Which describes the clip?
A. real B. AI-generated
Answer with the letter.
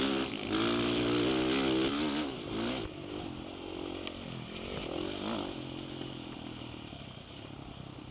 A